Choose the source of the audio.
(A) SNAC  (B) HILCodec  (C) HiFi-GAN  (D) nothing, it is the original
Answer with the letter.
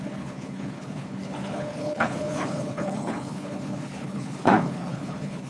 B